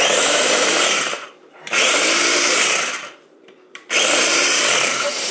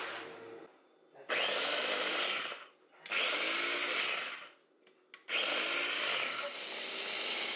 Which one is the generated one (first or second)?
first